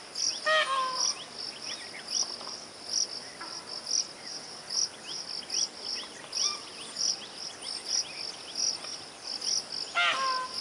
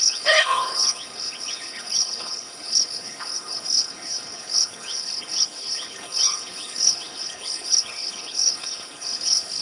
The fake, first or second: second